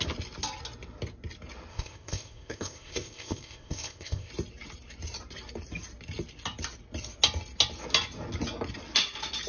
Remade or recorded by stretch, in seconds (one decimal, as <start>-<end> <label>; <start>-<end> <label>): 0.0-1.7 recorded; 1.7-4.3 remade; 4.3-9.5 recorded